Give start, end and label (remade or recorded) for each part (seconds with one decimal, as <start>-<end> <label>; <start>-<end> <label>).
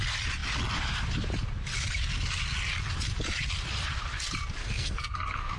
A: 0.0-4.6 recorded; 4.6-5.6 remade